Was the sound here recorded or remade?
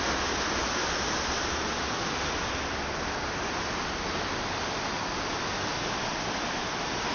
recorded